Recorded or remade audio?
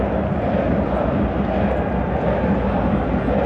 recorded